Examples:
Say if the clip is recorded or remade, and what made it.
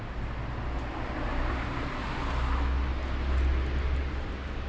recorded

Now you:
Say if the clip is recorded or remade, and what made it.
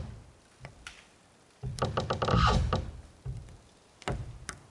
recorded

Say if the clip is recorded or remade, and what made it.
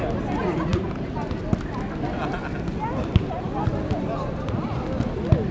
recorded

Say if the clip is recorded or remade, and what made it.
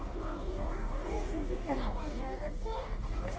remade, codec, DAC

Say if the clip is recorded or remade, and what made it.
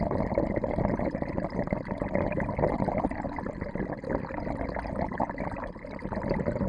recorded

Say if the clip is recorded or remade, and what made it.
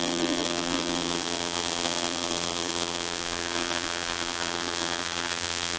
remade, vocoder, BigVGAN v2